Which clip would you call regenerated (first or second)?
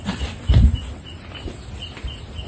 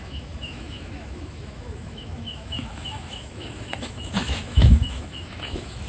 second